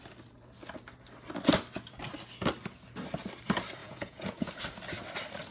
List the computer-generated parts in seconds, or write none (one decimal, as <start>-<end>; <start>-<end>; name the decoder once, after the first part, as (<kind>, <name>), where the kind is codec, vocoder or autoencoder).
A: 3.8-4.5 (vocoder, Vocos)